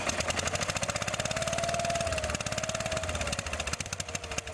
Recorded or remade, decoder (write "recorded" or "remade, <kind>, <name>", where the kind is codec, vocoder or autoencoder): recorded